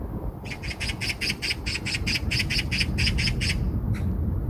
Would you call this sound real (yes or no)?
yes